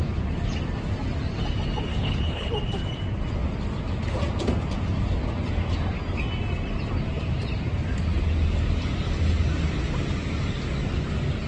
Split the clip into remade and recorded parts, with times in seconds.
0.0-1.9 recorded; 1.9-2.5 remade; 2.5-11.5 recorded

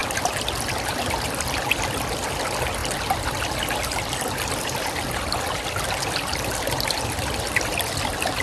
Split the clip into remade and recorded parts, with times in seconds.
0.0-8.4 recorded